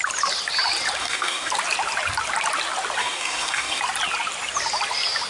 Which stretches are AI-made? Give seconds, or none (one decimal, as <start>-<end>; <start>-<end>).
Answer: 1.0-1.5; 3.0-3.8